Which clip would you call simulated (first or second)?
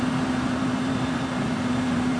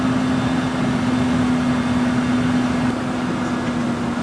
first